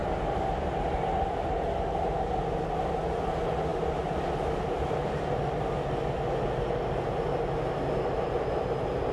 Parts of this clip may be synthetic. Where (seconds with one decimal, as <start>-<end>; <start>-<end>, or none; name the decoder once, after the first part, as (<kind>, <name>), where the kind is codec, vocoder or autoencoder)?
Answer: none